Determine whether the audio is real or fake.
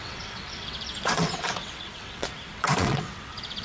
fake